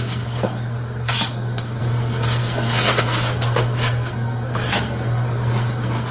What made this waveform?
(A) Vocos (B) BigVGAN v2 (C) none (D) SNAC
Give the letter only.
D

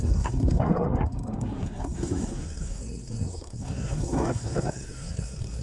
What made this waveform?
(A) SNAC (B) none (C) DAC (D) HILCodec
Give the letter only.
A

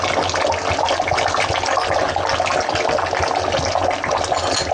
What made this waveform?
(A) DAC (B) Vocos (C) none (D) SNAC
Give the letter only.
C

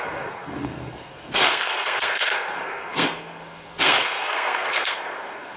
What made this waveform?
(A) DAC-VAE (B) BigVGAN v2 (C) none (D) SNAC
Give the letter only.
D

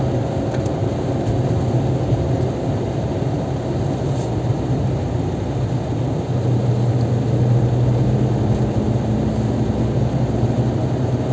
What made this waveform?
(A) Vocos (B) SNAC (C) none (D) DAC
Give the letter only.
C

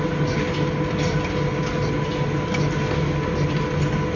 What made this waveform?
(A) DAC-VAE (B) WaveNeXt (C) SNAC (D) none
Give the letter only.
D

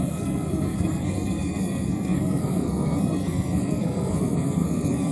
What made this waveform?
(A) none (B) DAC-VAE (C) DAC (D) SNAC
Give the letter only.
D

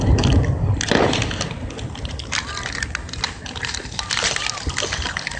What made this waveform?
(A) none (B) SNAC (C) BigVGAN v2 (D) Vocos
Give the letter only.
A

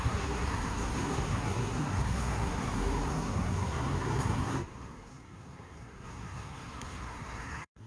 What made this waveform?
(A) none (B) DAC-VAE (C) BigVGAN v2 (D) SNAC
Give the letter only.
D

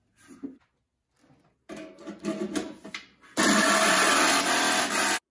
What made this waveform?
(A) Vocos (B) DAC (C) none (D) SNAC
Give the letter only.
C